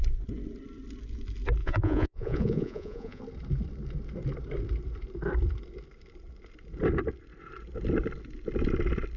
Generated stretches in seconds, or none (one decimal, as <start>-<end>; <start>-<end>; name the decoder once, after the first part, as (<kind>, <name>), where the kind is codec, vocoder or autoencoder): 1.6-3.2 (vocoder, Vocos)